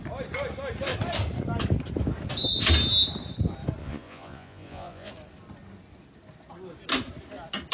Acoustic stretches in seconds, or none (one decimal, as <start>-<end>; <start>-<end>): 0.0-3.8; 5.1-7.7